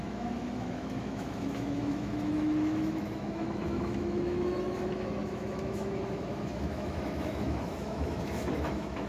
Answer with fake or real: fake